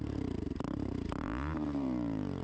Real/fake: fake